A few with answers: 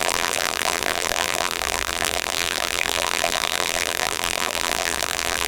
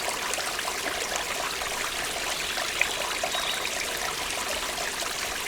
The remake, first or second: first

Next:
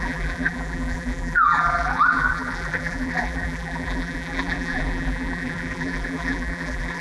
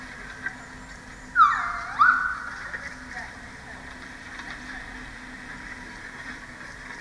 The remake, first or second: first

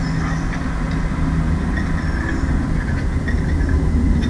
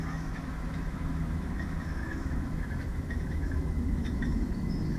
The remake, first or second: second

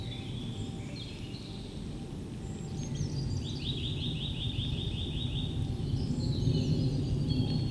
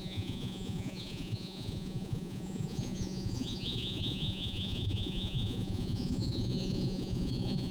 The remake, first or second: second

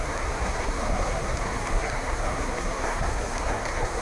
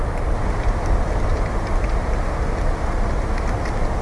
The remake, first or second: first